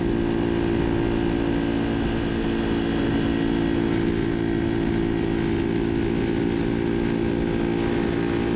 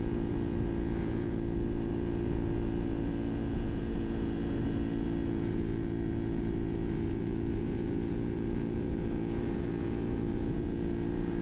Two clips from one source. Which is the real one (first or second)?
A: first